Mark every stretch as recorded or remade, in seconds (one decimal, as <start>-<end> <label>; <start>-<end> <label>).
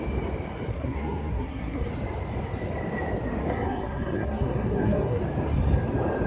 0.0-0.7 recorded; 0.7-1.9 remade; 1.9-3.4 recorded; 3.4-5.2 remade; 5.2-6.3 recorded